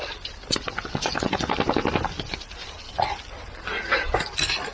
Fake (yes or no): no